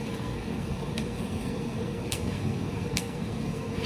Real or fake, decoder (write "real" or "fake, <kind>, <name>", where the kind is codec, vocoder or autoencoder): fake, codec, SNAC